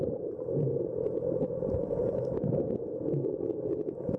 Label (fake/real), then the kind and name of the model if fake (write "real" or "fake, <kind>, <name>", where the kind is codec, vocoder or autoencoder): fake, vocoder, BigVGAN v2